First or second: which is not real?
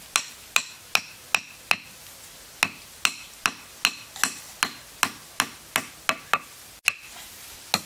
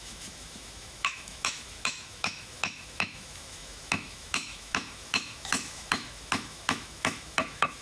second